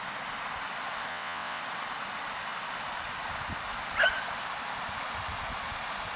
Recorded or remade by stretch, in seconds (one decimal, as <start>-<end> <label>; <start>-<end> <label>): 0.0-1.1 recorded; 1.1-1.6 remade; 1.6-6.2 recorded